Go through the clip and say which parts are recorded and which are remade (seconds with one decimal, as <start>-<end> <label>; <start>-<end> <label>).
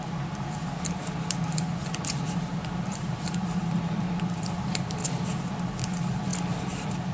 0.0-5.0 remade; 5.0-5.6 recorded; 5.6-6.3 remade; 6.3-7.1 recorded